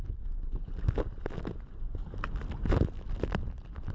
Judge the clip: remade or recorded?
recorded